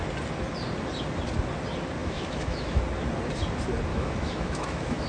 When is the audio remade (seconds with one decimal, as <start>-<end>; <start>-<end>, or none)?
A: 2.0-2.8; 3.9-5.1